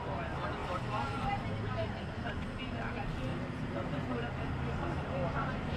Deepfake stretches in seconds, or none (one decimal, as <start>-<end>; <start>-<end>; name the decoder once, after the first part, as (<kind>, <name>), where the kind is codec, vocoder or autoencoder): none